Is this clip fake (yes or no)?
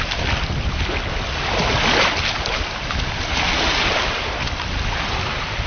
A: no